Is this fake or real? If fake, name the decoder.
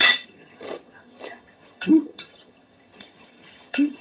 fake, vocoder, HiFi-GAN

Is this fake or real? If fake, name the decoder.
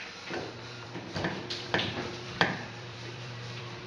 fake, vocoder, BigVGAN v2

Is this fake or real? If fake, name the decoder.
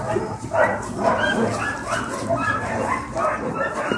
real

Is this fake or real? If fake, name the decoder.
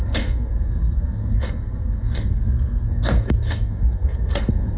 fake, codec, SNAC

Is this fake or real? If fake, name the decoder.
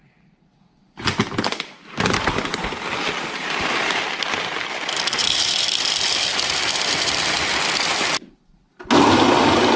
fake, vocoder, BigVGAN v2